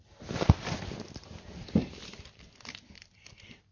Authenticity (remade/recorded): recorded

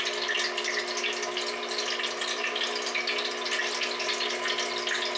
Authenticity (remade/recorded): recorded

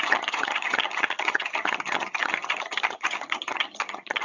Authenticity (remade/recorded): remade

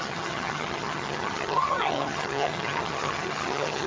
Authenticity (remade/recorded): remade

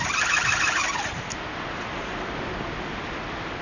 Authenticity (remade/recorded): recorded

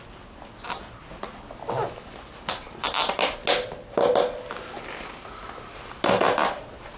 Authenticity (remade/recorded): recorded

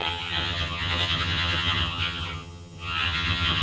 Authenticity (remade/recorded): remade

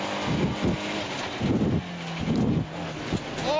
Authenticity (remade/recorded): recorded